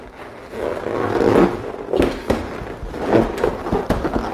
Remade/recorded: recorded